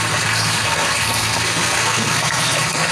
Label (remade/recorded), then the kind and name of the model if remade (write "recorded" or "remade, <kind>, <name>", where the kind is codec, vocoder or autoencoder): remade, codec, SNAC